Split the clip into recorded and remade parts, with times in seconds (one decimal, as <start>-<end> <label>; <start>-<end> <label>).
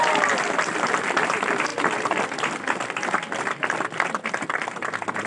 0.0-5.3 recorded